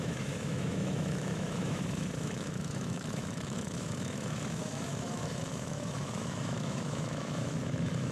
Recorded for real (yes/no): no